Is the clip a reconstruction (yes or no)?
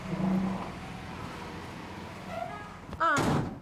no